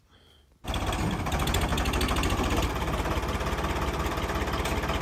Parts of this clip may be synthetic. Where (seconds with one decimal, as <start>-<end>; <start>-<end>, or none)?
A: none